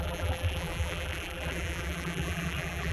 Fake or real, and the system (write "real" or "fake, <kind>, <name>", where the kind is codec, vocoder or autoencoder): fake, vocoder, BigVGAN v2